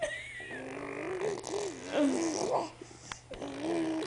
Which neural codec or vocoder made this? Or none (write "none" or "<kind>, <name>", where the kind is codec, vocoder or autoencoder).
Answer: none